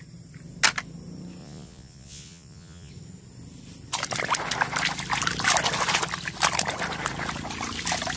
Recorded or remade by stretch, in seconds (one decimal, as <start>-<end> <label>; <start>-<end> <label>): 0.0-1.4 recorded; 1.4-2.9 remade; 2.9-8.2 recorded